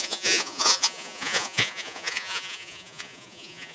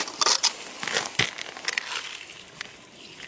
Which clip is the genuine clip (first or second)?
second